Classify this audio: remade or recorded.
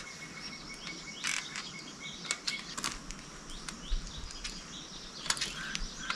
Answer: recorded